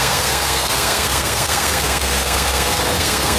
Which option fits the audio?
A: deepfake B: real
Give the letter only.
A